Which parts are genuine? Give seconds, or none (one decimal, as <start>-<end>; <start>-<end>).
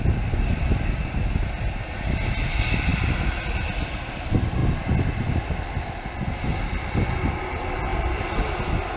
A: 0.0-9.0